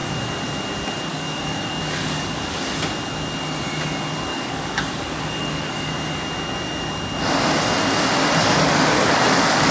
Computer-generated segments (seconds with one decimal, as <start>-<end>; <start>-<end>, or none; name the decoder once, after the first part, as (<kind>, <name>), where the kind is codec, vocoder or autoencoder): 1.1-2.6 (codec, DAC); 4.3-5.9; 8.4-9.7